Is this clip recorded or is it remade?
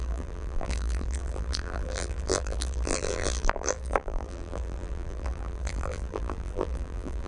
remade